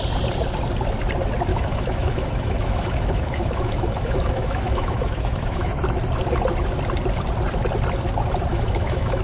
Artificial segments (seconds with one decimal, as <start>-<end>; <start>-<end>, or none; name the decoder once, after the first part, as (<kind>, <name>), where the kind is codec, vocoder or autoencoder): 1.5-5.8 (autoencoder, DAC-VAE); 8.5-9.2